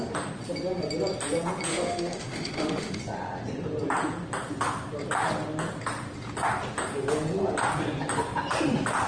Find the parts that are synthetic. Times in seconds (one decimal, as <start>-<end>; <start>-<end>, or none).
1.7-3.0